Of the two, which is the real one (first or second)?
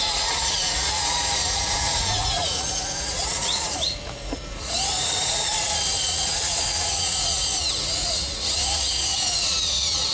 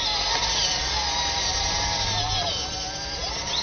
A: second